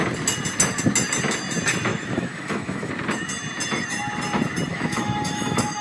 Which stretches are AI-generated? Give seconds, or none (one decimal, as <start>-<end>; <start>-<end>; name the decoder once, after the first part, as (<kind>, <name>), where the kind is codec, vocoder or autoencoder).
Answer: 1.9-2.9 (autoencoder, DAC-VAE); 4.7-5.8